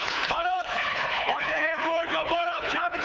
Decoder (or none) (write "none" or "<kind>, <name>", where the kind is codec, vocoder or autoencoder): codec, HILCodec